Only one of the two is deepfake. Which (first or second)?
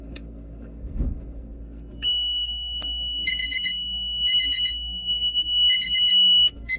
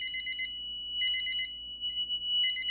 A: first